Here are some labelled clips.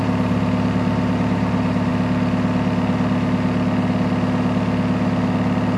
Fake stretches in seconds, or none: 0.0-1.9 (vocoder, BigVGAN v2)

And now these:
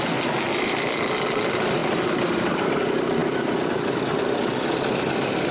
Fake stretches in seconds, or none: 0.0-5.5 (vocoder, BigVGAN v2)

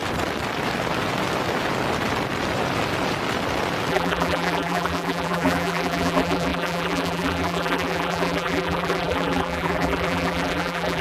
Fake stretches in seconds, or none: 3.9-11.0 (vocoder, BigVGAN v2)

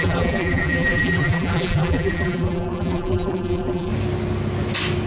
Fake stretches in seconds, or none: 0.0-3.9 (vocoder, BigVGAN v2)

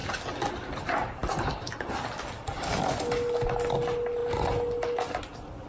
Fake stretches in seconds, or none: none

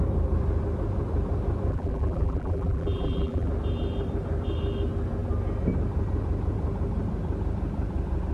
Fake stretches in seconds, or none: 1.7-3.5 (vocoder, BigVGAN v2)

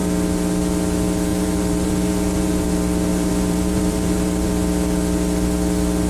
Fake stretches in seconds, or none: 1.3-2.7 (vocoder, BigVGAN v2); 3.1-4.5

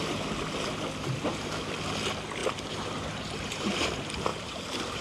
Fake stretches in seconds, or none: 2.4-3.8 (vocoder, BigVGAN v2); 4.3-5.0